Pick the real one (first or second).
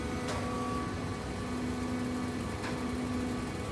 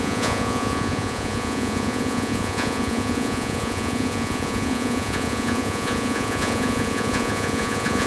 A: first